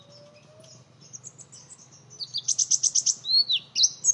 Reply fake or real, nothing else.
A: real